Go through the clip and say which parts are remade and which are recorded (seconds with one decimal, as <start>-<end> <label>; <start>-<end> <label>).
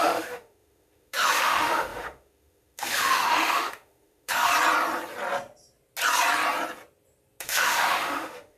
0.0-4.5 remade; 4.5-7.4 recorded; 7.4-8.6 remade